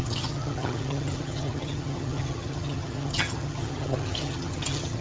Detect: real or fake fake